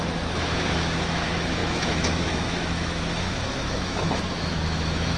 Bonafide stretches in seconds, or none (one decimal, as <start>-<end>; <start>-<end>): none